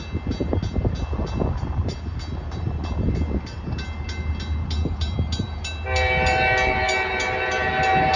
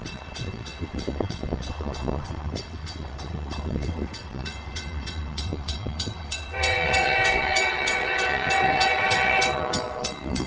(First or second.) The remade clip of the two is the second